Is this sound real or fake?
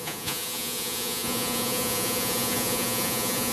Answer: fake